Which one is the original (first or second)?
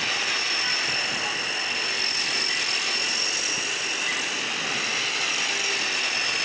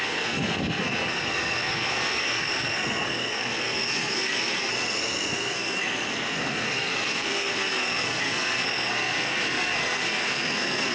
first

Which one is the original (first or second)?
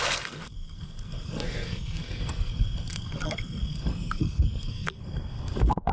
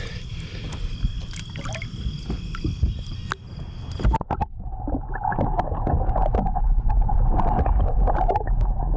second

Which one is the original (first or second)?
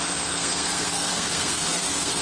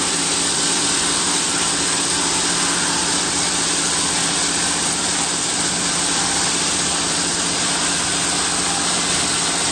second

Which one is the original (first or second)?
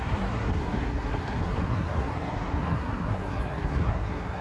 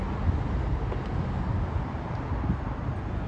second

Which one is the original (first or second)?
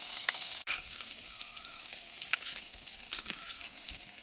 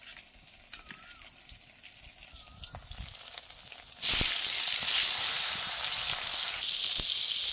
second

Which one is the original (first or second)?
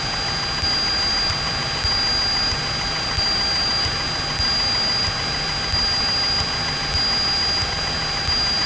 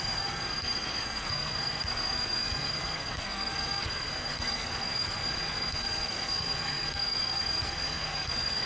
first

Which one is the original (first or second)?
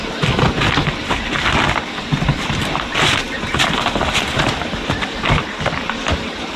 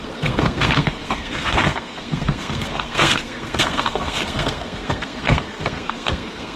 first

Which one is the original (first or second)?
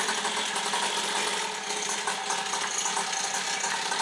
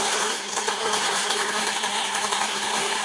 first